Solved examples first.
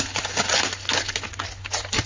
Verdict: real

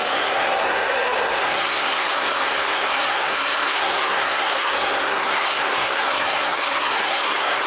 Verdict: fake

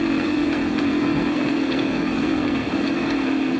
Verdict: fake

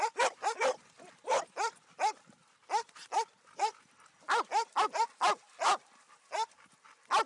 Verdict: real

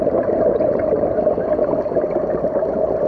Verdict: real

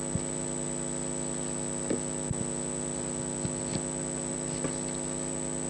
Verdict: real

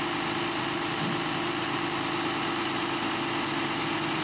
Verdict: real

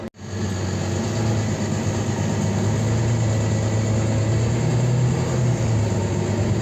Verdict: real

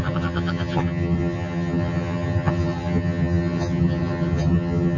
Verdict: fake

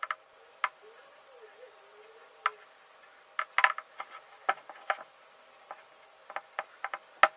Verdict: real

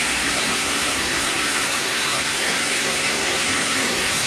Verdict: fake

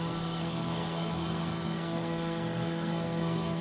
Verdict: fake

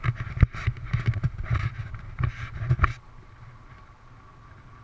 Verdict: real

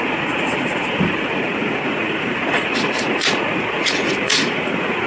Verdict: fake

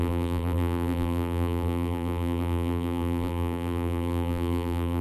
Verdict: fake